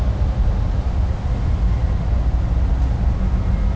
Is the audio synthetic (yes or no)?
no